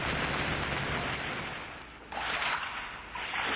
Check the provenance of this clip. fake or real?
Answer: real